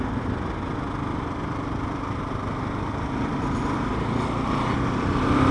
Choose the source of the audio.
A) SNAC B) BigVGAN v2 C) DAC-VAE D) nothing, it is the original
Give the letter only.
D